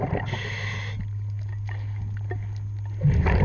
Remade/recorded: recorded